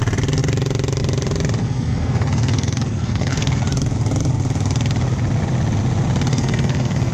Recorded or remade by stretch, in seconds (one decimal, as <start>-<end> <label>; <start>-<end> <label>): 0.0-1.6 recorded; 1.6-3.6 remade; 3.6-6.3 recorded; 6.3-7.1 remade